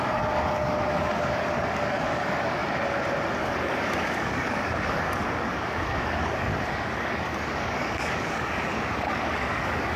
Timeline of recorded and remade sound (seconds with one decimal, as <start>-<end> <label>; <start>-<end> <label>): 0.0-2.6 remade; 2.6-3.4 recorded; 3.4-10.0 remade